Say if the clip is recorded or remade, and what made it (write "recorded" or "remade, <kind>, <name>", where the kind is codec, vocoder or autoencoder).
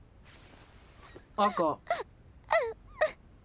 recorded